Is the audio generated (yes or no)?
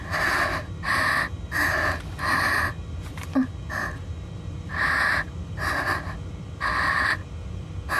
no